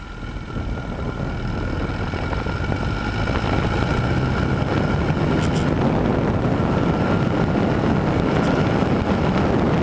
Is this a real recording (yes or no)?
yes